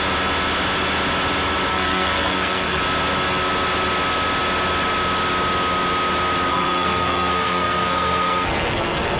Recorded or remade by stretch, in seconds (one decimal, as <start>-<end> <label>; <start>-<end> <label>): 0.0-1.7 recorded; 1.7-2.8 remade; 2.8-6.5 recorded; 6.5-9.2 remade

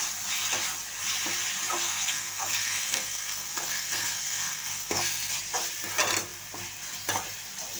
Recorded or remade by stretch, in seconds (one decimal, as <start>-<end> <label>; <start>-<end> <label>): 0.0-1.8 recorded; 1.8-5.3 remade; 5.3-7.8 recorded

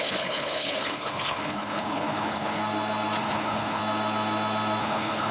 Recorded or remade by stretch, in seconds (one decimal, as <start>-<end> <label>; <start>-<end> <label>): 0.0-2.6 remade; 2.6-3.2 recorded; 3.2-3.8 remade; 3.8-4.8 recorded; 4.8-5.3 remade

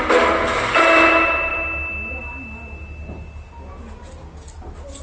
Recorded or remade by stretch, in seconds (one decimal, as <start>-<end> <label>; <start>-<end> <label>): 0.0-5.0 recorded

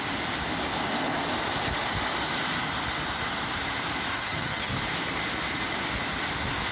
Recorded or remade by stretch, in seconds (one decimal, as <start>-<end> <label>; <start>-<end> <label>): 0.0-4.1 recorded; 4.1-4.7 remade; 4.7-6.7 recorded

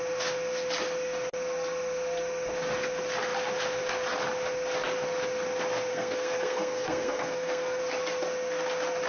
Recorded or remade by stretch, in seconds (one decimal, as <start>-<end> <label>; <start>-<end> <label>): 0.0-5.9 recorded; 5.9-7.8 remade; 7.8-9.1 recorded